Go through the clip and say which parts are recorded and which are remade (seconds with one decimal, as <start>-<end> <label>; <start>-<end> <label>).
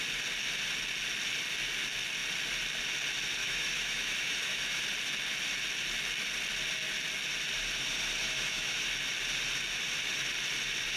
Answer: 0.0-3.4 recorded; 3.4-4.8 remade; 4.8-8.2 recorded; 8.2-8.8 remade; 8.8-11.0 recorded